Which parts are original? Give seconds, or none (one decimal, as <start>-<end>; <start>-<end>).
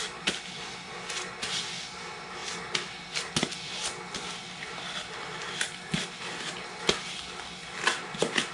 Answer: 0.0-8.5